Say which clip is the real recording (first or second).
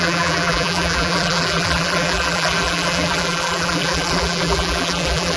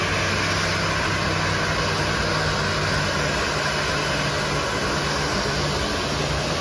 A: second